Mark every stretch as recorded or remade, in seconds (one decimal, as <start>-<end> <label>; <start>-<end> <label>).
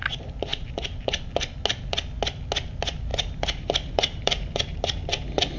0.0-0.5 recorded; 0.5-1.2 remade; 1.2-3.1 recorded; 3.1-5.1 remade; 5.1-5.6 recorded